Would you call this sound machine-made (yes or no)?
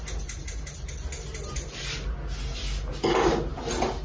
no